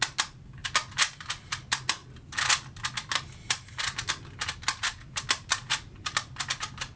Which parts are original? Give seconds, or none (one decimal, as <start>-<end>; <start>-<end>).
0.0-7.0